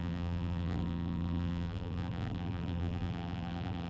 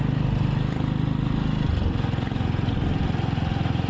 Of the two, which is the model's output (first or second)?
first